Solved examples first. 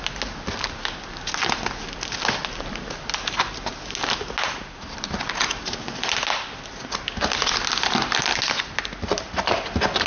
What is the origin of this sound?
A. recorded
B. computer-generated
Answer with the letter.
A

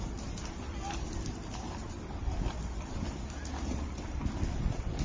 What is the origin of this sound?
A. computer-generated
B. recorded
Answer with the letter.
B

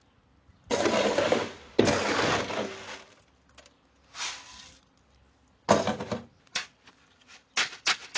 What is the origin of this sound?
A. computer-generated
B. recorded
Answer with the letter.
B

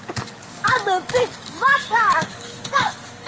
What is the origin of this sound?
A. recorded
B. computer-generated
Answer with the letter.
B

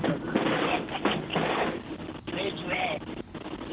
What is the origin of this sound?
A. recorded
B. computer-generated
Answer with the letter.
A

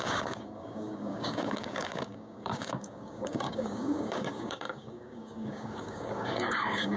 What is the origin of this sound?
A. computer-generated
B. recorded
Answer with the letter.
A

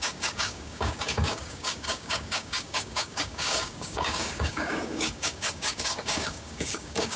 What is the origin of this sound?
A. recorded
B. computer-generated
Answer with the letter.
B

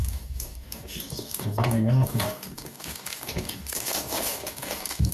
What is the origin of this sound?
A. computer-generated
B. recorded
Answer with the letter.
A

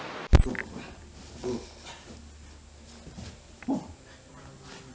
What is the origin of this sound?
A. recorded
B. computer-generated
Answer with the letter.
A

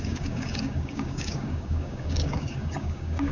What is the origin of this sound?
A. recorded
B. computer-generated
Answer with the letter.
B